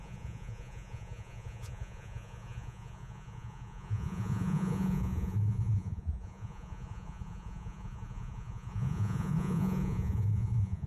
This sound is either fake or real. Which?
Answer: fake